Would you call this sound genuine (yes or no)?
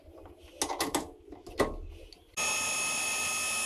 yes